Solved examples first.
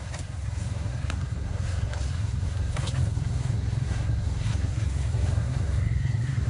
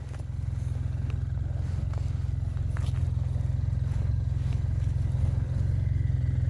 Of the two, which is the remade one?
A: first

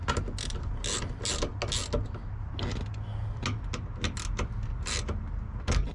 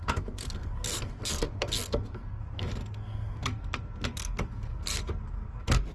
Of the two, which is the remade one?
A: second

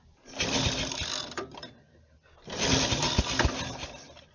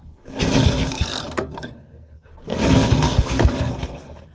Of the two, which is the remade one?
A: second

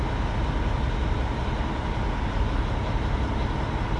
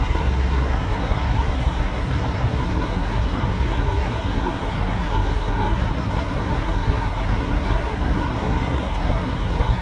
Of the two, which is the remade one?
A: second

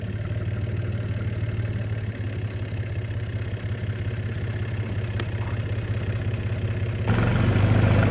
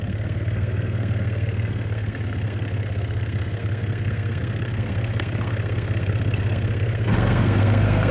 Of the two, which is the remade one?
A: second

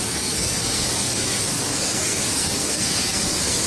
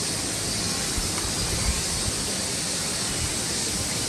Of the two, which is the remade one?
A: first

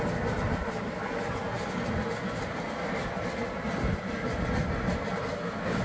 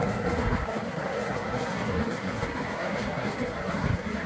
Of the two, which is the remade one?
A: second